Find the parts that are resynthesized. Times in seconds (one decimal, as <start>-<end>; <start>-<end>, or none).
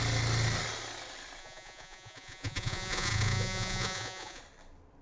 1.4-4.4